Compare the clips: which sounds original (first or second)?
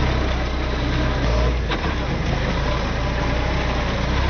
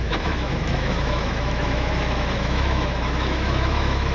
first